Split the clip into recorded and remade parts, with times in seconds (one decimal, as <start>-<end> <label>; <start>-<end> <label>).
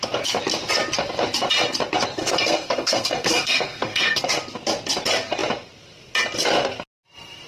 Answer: 0.0-2.2 recorded; 2.2-4.3 remade; 4.3-7.5 recorded